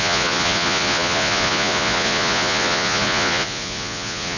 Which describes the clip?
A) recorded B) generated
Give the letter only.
B